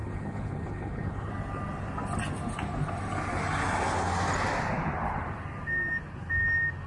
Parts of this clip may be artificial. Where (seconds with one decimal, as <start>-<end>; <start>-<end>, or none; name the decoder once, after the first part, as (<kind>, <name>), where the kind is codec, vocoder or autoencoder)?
0.0-1.3 (codec, HILCodec)